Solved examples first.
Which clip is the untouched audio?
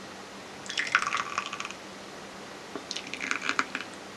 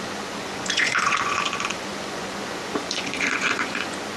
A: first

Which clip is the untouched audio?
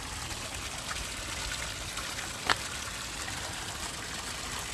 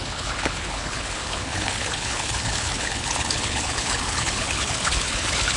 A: first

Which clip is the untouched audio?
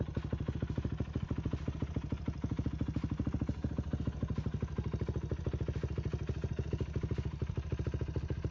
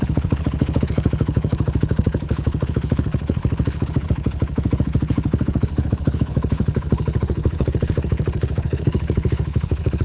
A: first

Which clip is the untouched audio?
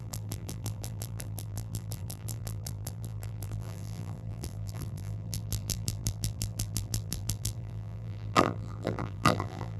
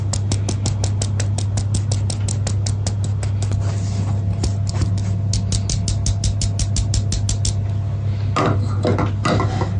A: second